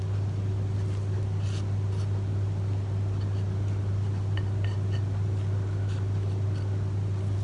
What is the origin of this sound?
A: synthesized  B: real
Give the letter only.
B